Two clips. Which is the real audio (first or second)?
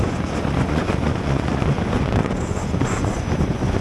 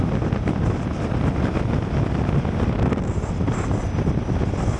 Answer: second